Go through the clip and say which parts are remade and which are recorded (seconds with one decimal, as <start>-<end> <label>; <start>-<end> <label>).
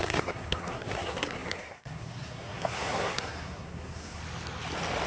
0.0-4.2 remade; 4.2-5.1 recorded